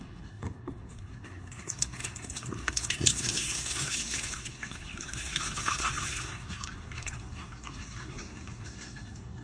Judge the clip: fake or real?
fake